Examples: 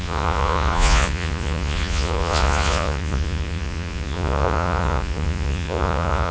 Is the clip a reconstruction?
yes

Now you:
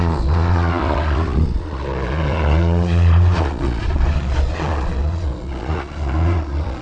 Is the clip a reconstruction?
yes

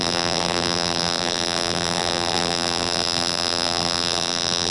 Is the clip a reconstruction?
yes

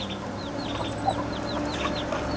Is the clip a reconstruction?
no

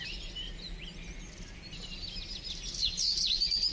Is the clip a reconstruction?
no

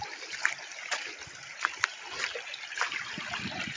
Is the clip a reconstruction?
no